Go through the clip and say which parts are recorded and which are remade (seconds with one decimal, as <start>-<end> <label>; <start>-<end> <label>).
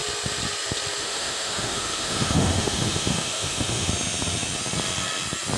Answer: 0.0-1.0 recorded; 1.0-3.9 remade; 3.9-5.6 recorded